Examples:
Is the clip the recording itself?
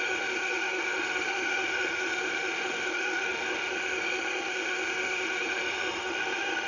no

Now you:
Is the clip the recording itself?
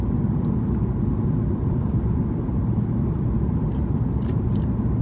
yes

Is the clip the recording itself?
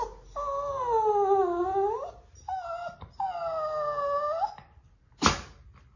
yes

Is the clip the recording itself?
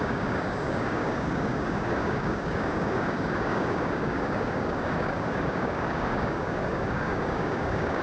no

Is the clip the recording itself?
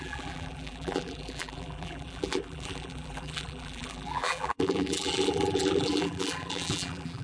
no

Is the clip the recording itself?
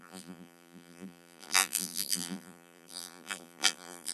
no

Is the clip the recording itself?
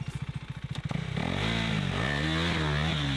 yes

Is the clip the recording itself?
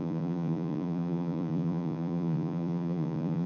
no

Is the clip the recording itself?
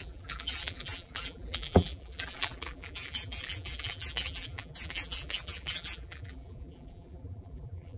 no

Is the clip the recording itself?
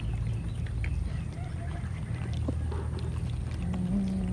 yes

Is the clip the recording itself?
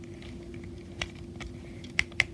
yes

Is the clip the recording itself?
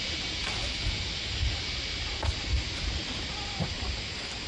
yes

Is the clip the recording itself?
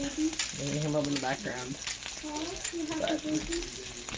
yes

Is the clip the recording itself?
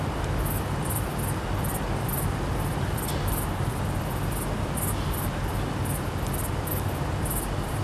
no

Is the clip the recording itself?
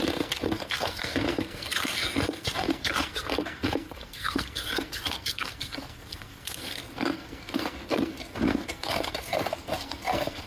no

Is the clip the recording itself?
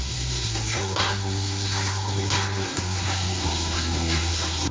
no